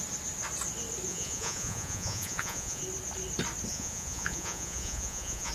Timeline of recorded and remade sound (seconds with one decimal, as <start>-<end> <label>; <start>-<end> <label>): 0.0-1.1 recorded; 1.1-2.8 remade; 2.8-3.7 recorded; 3.7-5.5 remade